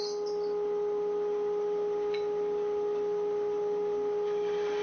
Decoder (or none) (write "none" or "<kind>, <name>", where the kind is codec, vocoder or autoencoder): none